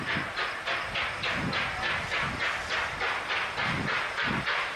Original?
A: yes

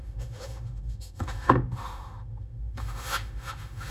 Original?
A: no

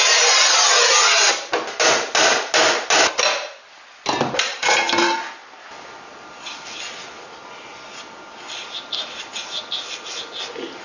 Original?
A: yes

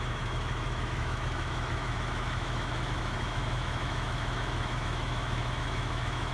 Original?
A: no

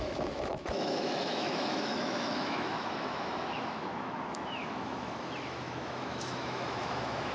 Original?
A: no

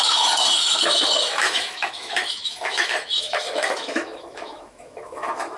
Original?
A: no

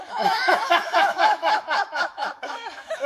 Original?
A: no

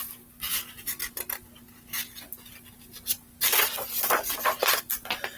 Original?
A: yes